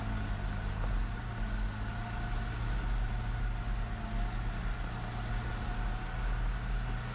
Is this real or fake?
real